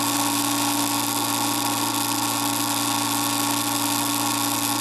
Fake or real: real